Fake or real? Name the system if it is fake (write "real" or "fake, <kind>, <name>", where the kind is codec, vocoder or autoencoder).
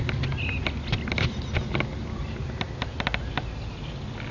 real